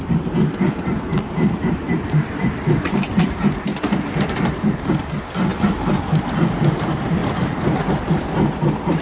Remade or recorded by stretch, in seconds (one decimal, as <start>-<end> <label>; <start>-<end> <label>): 0.0-1.1 recorded; 1.1-4.9 remade; 4.9-9.0 recorded